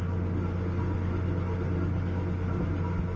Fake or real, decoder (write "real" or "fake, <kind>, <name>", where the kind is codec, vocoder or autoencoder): real